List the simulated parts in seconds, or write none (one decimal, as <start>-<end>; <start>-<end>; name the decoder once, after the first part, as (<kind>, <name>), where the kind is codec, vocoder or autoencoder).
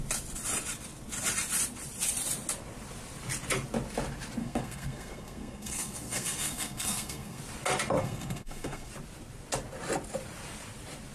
4.4-7.4 (codec, SNAC); 8.0-8.9